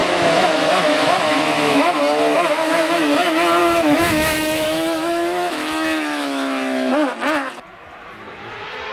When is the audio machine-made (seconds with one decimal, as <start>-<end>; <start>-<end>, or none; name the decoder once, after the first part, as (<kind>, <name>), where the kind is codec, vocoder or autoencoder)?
0.0-2.0 (autoencoder, DAC-VAE); 3.6-6.9